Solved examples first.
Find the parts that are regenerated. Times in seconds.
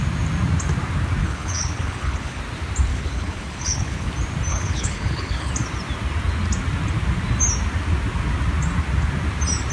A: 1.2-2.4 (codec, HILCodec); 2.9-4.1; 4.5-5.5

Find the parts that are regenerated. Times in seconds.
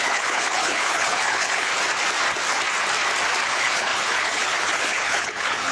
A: 0.0-1.7 (codec, HILCodec); 3.4-5.7